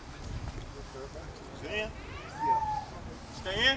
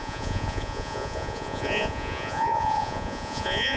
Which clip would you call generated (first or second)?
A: second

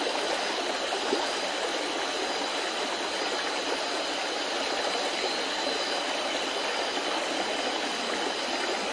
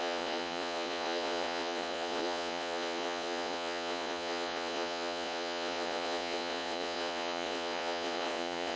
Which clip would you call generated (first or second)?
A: second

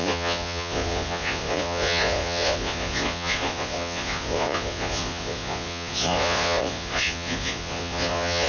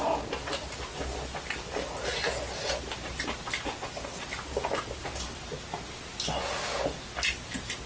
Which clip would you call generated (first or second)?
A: first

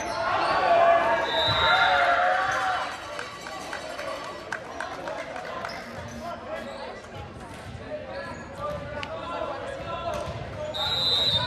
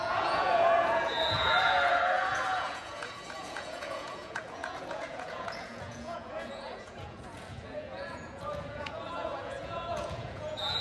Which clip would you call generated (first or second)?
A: second